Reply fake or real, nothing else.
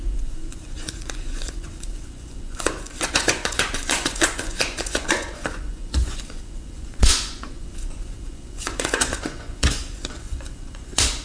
fake